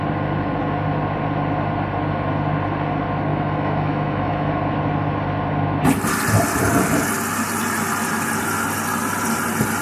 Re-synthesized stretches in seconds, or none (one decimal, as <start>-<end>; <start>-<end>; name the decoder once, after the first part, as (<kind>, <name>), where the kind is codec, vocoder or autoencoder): 3.3-4.5 (autoencoder, DAC-VAE)